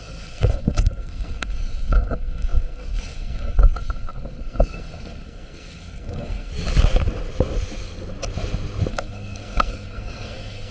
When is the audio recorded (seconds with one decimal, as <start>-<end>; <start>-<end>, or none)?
6.5-8.9